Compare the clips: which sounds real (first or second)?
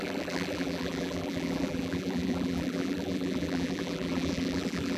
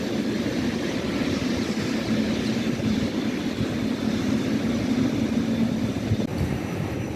second